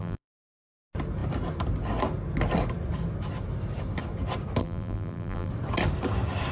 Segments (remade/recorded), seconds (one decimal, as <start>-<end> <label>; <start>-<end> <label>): 0.0-0.7 remade; 0.7-4.6 recorded; 4.6-5.5 remade; 5.5-6.5 recorded